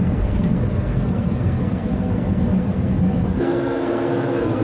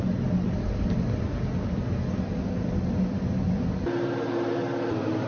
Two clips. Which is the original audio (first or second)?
second